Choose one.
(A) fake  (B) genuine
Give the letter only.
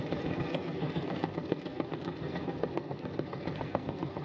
A